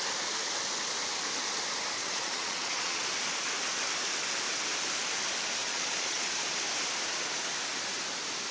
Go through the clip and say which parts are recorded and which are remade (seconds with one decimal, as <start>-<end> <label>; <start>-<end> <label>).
0.0-2.0 recorded; 2.0-3.1 remade; 3.1-5.6 recorded; 5.6-6.3 remade; 6.3-8.5 recorded

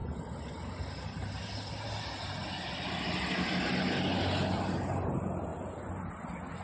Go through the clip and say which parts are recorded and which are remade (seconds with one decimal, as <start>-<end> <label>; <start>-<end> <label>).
0.0-6.6 recorded

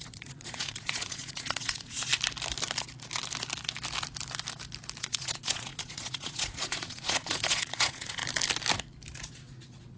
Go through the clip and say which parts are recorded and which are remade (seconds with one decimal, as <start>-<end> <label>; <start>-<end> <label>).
0.0-2.1 remade; 2.1-5.0 recorded; 5.0-8.2 remade; 8.2-9.3 recorded; 9.3-10.0 remade

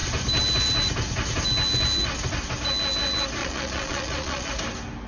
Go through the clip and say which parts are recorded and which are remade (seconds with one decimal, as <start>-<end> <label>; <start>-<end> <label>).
0.0-3.4 recorded; 3.4-4.5 remade; 4.5-5.1 recorded